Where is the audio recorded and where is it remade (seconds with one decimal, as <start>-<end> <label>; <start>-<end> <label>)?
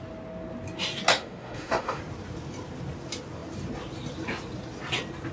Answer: 0.0-1.1 recorded; 1.1-2.0 remade; 2.0-5.3 recorded